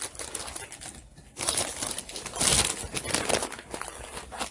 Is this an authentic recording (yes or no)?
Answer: yes